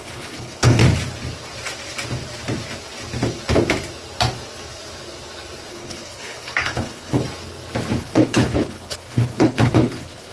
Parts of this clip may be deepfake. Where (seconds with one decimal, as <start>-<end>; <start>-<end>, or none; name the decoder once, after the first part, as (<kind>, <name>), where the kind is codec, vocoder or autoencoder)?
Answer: 0.0-0.8 (codec, HILCodec); 5.7-7.2; 8.0-10.3